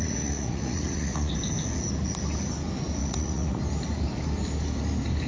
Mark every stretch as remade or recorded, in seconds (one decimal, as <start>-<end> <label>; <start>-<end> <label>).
0.0-1.3 remade; 1.3-3.0 recorded; 3.0-3.6 remade; 3.6-5.3 recorded